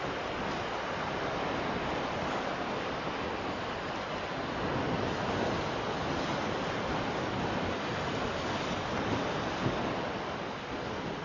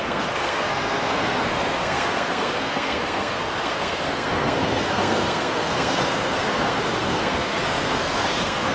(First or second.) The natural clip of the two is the first